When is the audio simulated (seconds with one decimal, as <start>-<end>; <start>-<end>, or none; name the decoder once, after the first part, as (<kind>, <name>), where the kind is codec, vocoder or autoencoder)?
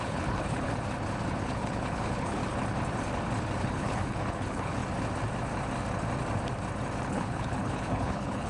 0.0-0.7 (codec, HILCodec); 1.4-2.4; 3.6-4.8; 7.1-8.5